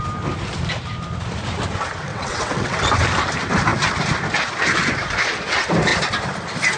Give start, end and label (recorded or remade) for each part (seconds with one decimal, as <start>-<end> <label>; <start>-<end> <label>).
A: 0.0-2.1 recorded; 2.1-2.8 remade; 2.8-6.8 recorded

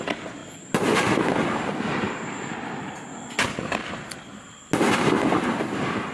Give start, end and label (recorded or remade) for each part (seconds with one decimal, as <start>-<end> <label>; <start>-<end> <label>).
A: 0.0-6.1 recorded

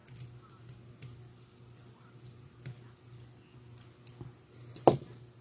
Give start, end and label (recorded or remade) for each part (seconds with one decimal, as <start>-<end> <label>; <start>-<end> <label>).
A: 0.0-5.4 recorded

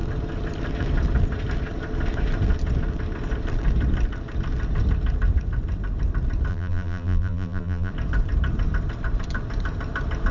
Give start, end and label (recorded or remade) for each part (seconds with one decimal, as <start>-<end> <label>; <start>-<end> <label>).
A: 0.0-6.5 recorded; 6.5-7.9 remade; 7.9-10.3 recorded